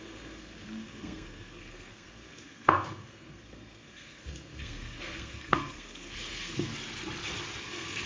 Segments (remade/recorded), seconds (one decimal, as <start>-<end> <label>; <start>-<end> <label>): 0.0-6.7 remade; 6.7-7.6 recorded; 7.6-8.1 remade